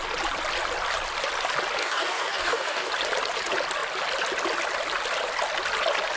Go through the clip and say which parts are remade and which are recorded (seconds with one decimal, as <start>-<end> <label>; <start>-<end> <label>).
0.0-1.8 recorded; 1.8-2.9 remade; 2.9-6.2 recorded